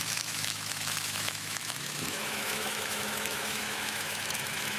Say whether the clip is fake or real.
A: fake